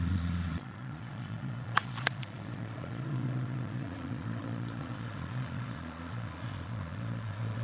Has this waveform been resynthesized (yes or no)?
yes